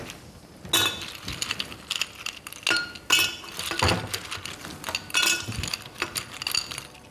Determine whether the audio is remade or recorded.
recorded